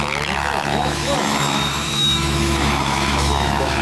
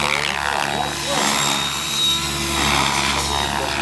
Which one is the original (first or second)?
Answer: second